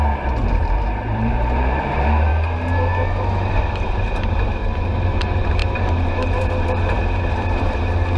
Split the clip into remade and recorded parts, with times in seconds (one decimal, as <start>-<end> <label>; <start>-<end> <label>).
0.0-2.3 remade; 2.3-3.5 recorded; 3.5-8.2 remade